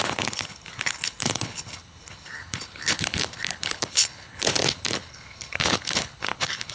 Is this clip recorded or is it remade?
remade